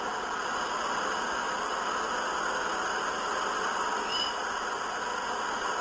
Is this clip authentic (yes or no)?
yes